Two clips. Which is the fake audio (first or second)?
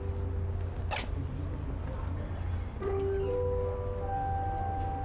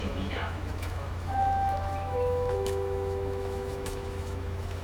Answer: second